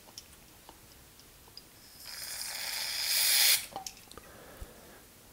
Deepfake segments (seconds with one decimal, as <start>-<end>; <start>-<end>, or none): none